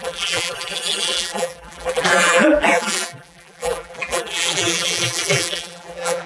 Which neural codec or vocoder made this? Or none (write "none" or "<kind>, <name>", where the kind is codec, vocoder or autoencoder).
vocoder, BigVGAN v2